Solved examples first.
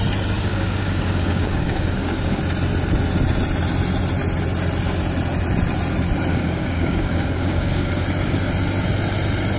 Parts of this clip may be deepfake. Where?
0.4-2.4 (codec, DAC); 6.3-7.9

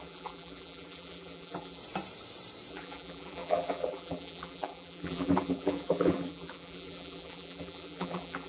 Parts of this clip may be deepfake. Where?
0.0-1.8 (vocoder, BigVGAN v2); 2.7-8.5